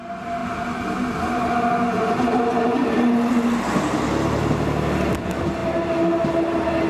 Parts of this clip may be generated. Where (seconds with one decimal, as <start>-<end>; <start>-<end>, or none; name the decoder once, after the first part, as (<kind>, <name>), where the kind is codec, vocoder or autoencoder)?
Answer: none